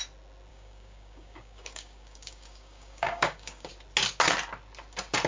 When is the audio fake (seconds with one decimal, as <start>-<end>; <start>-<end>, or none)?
0.5-3.7